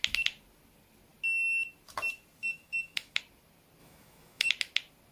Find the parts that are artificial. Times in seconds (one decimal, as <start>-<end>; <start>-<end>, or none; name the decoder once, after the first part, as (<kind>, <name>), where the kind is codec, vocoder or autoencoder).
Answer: 2.4-3.2 (autoencoder, DAC-VAE); 3.8-4.5